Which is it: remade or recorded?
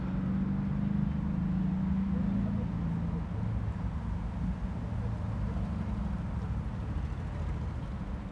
recorded